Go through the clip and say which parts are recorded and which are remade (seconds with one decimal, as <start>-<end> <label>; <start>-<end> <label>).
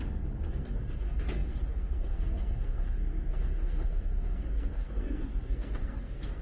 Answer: 0.0-6.4 remade